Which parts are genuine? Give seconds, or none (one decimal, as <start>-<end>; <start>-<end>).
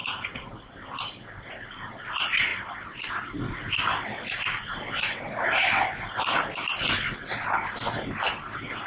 1.5-2.5; 3.1-8.9